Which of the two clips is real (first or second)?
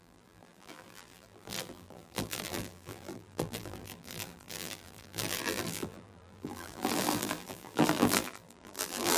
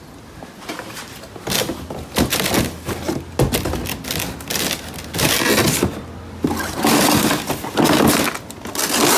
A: second